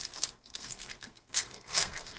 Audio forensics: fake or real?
fake